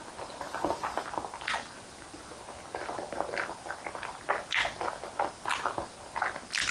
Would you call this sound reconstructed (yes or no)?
no